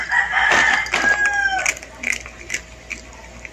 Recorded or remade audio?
recorded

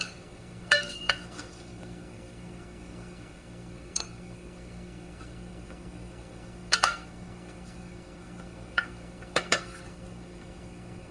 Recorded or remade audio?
remade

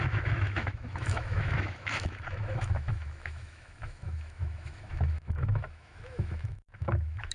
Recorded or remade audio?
remade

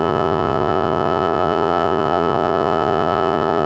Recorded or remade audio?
remade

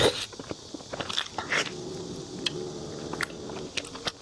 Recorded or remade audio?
recorded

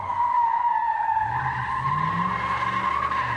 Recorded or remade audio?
recorded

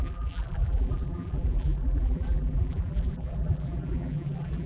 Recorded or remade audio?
remade